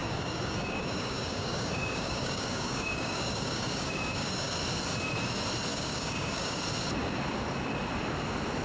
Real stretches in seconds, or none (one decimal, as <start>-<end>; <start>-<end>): 4.6-5.7; 6.6-8.6